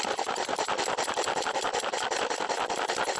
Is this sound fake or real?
real